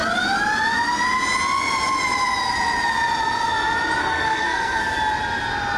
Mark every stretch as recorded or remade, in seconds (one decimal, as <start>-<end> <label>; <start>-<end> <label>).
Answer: 0.0-4.0 recorded; 4.0-4.8 remade; 4.8-5.8 recorded